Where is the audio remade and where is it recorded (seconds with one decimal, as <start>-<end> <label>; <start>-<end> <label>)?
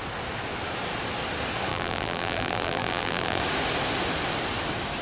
0.0-1.7 recorded; 1.7-3.4 remade; 3.4-5.0 recorded